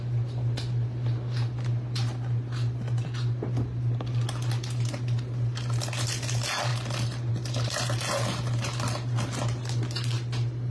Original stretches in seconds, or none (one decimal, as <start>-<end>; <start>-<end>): 0.0-10.7